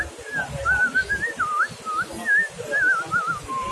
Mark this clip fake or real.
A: real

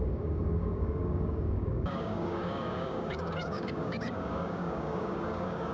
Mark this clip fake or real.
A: fake